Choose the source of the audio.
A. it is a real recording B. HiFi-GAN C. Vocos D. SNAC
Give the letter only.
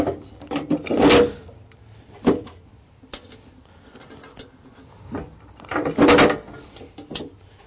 A